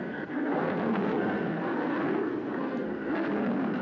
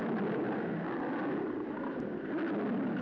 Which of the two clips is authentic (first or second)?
second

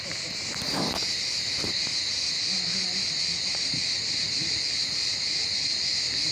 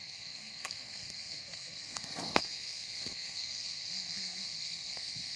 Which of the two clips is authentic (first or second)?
first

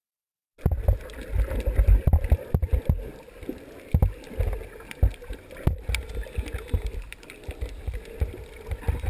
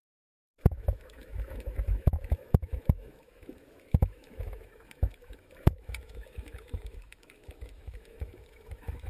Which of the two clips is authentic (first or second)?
first